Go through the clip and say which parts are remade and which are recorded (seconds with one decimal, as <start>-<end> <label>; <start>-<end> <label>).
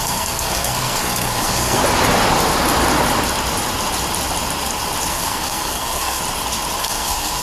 0.0-1.8 remade; 1.8-5.1 recorded; 5.1-6.2 remade; 6.2-6.8 recorded; 6.8-7.4 remade